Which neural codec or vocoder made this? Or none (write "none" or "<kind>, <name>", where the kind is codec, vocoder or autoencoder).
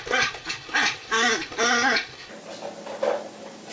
none